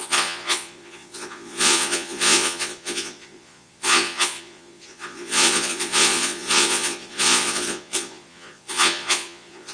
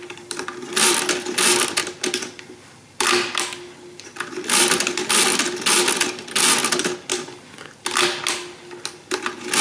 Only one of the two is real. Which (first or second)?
second